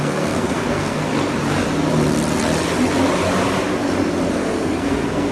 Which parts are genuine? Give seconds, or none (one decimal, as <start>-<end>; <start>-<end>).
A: 1.1-4.3